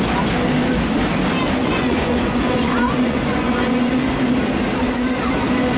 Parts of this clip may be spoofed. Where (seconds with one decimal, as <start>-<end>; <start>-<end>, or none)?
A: 1.6-3.9